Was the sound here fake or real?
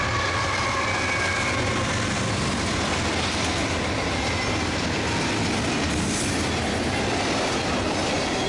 real